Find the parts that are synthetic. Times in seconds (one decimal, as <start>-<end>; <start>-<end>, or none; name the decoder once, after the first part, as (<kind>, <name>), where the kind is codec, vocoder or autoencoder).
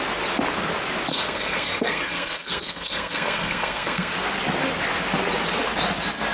1.1-4.1 (codec, SNAC)